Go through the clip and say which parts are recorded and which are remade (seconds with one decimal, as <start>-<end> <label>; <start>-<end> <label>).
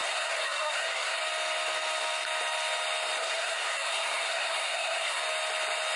0.0-1.2 remade; 1.2-3.2 recorded; 3.2-5.2 remade; 5.2-6.0 recorded